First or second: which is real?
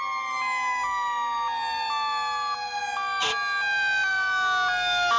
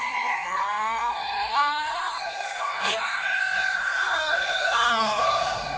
first